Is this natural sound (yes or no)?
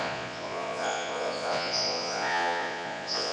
no